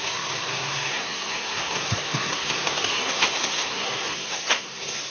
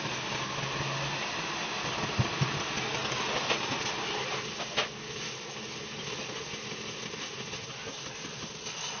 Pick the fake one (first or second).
first